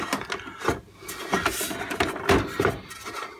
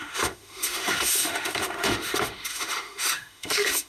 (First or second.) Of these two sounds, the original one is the first